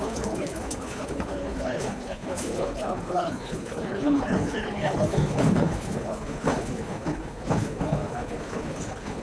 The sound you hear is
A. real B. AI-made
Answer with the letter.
B